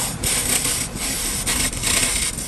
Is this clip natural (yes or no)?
yes